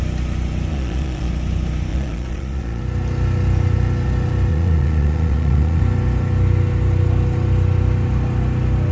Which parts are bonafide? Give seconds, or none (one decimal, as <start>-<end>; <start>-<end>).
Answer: 0.0-0.7; 1.3-1.9; 2.8-4.5; 5.8-8.9